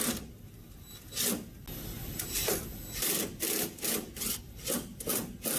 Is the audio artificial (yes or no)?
no